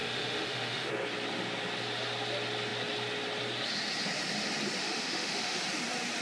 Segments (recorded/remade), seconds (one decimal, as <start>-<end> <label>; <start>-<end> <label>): 0.0-0.9 remade; 0.9-4.8 recorded; 4.8-5.6 remade; 5.6-6.2 recorded